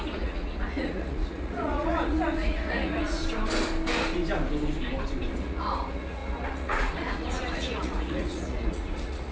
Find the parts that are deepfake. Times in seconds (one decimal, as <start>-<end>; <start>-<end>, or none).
0.0-3.2; 5.3-9.3